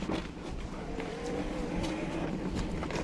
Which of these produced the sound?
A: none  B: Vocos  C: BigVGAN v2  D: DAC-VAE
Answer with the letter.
A